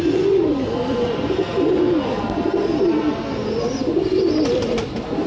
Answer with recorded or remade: recorded